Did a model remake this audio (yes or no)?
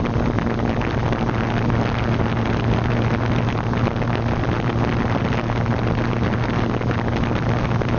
no